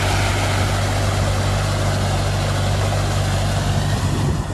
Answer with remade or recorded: recorded